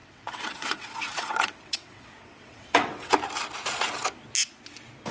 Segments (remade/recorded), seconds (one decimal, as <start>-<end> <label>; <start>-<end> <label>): 0.0-3.1 remade; 3.1-5.1 recorded